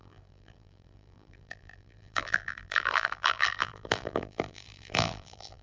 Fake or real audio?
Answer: fake